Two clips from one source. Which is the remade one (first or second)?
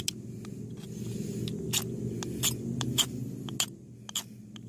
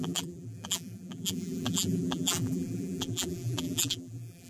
second